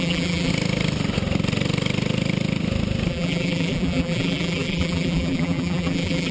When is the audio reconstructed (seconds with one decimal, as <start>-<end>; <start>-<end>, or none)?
0.0-0.5; 3.1-6.3